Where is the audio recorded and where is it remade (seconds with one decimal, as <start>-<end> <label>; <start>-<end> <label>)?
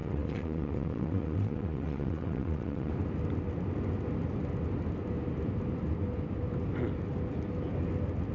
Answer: 0.0-2.9 remade; 2.9-8.3 recorded